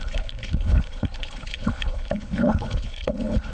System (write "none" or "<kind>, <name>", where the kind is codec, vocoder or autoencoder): codec, HILCodec